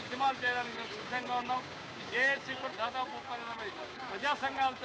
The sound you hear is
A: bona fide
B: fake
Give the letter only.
B